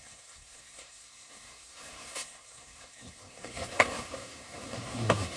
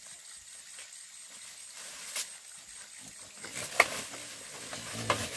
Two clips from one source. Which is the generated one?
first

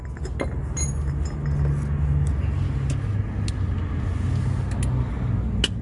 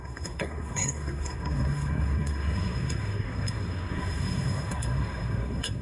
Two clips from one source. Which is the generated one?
second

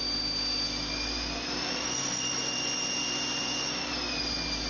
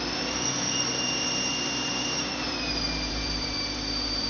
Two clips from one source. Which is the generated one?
second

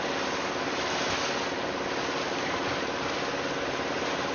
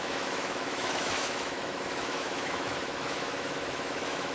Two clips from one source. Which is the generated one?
second